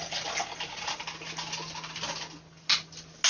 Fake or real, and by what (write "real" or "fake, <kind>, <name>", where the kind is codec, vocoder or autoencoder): real